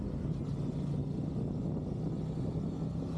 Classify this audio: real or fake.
real